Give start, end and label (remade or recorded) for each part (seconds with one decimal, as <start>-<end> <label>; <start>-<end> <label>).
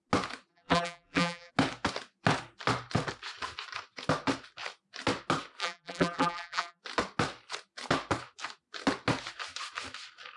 0.0-0.5 recorded; 0.5-1.5 remade; 1.5-5.6 recorded; 5.6-6.8 remade; 6.8-10.4 recorded